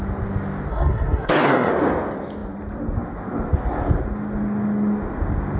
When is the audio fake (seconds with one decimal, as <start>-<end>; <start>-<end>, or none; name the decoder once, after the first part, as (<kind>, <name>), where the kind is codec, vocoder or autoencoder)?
0.7-1.7 (codec, SNAC)